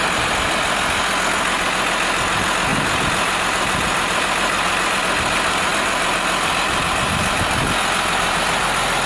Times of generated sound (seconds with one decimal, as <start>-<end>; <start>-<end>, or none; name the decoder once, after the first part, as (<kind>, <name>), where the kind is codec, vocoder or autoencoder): 2.7-5.0 (vocoder, BigVGAN v2); 5.7-8.4